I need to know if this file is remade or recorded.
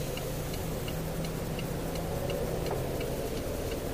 recorded